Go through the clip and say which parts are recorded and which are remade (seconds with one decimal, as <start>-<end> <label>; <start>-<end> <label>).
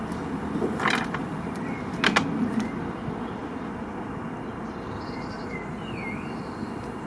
0.0-7.1 recorded